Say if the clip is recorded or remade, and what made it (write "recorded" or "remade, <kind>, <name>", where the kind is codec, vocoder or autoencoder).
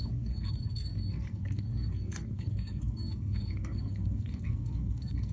remade, codec, SNAC